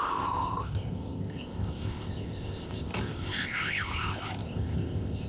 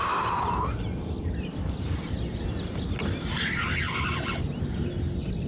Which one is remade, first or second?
first